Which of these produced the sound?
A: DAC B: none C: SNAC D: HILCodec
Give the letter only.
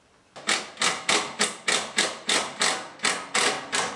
B